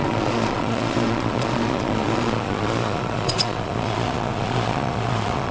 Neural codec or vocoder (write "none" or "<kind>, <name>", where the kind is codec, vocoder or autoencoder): vocoder, Vocos